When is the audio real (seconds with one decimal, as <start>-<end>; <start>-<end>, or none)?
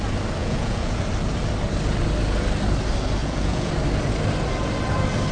0.0-0.4; 1.0-3.2; 3.7-5.3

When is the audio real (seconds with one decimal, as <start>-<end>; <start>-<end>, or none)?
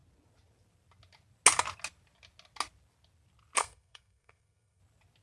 0.0-3.6; 4.8-5.2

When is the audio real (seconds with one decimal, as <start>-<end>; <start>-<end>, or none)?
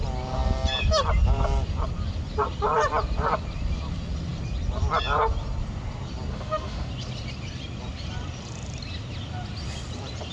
0.0-6.3; 6.9-10.3